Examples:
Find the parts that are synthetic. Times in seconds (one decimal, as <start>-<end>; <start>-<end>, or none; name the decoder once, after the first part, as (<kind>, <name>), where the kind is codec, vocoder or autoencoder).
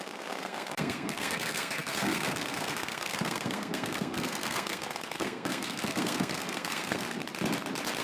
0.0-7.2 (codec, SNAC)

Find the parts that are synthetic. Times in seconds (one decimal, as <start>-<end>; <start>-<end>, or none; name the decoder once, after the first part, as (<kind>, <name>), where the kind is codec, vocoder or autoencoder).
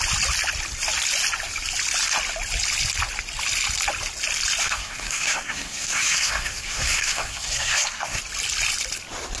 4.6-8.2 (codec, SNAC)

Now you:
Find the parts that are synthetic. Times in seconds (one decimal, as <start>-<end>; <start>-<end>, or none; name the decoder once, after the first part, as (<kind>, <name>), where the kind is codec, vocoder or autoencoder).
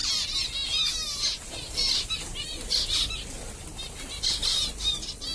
none